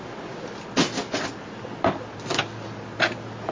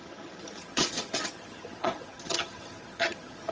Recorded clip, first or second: first